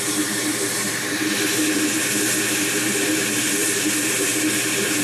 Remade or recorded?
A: remade